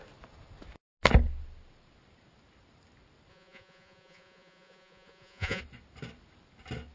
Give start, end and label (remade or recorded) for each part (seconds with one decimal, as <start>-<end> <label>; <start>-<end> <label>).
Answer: 0.0-3.3 recorded; 3.3-5.6 remade; 5.6-6.9 recorded